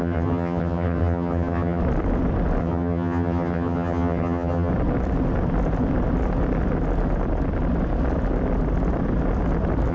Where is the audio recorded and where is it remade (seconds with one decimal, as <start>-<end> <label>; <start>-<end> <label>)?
0.0-1.8 remade; 1.8-2.6 recorded; 2.6-4.7 remade; 4.7-9.9 recorded